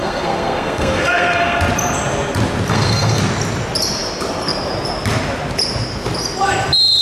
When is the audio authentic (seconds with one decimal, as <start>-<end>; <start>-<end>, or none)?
1.6-2.7; 3.2-7.0